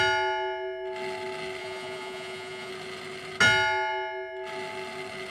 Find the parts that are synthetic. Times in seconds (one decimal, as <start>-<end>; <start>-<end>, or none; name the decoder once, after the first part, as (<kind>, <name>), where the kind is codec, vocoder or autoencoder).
1.6-2.7 (vocoder, Vocos)